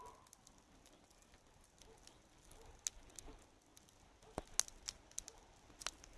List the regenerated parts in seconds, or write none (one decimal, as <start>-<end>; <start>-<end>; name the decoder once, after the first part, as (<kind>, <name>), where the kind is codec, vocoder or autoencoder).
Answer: none